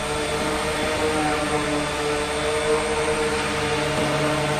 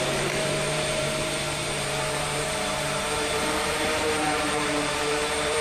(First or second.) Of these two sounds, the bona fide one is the first